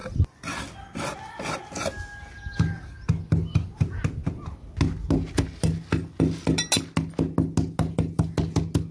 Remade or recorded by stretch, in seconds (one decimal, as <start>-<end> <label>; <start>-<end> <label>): 0.0-8.9 recorded